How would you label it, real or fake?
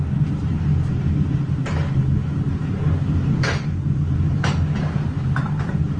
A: real